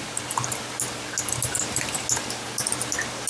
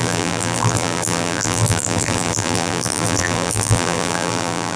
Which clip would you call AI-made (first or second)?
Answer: second